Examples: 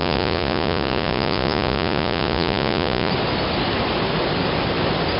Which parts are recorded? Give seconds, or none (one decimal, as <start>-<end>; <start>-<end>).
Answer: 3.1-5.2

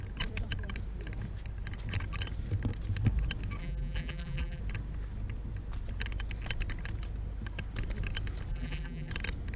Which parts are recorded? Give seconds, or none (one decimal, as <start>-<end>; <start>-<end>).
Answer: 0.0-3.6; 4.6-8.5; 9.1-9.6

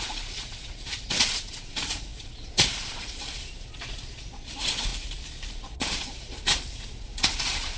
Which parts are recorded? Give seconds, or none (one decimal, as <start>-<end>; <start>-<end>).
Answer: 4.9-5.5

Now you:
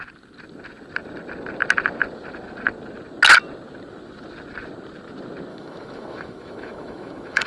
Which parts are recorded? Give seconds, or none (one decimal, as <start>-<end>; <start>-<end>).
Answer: 0.0-5.5

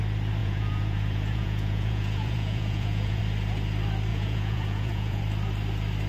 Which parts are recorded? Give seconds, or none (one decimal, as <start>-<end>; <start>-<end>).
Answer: 0.0-0.4; 3.2-4.1; 5.2-6.1

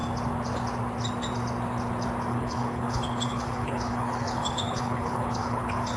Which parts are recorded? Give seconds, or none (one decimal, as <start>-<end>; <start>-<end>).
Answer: 0.0-2.3

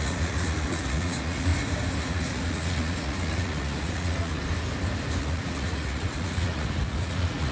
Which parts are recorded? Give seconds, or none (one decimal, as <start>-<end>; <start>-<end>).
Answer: 1.5-2.0; 4.4-5.2

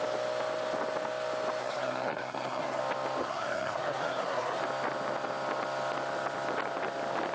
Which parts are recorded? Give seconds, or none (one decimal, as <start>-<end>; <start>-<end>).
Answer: 0.0-1.6; 2.8-3.2; 4.6-7.3